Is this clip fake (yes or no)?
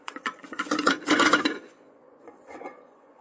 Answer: yes